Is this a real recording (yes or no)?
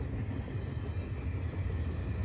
yes